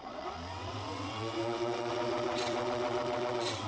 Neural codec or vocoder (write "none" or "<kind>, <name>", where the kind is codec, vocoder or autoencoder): vocoder, WaveNeXt